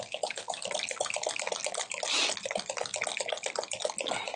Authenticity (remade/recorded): recorded